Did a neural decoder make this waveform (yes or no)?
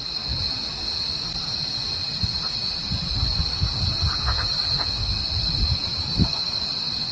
no